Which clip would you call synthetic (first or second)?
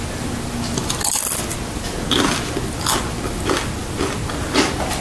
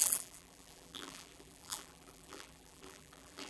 second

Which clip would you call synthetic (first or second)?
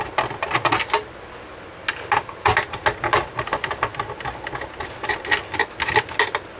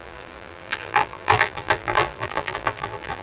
second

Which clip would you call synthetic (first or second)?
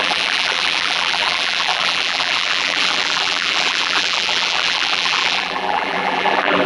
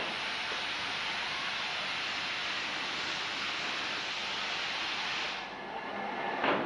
first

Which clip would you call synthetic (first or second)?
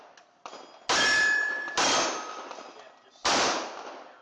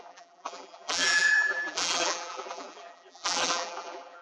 second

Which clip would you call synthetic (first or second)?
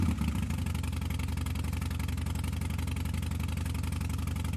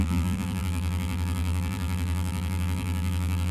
second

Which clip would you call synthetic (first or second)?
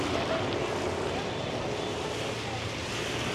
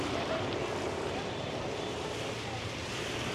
second